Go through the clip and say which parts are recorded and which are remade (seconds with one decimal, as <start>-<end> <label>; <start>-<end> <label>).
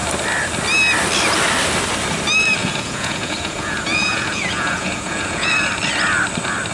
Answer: 0.0-2.6 recorded; 2.6-5.5 remade; 5.5-6.7 recorded